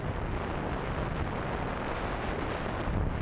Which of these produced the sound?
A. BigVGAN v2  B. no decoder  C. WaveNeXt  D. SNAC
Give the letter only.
B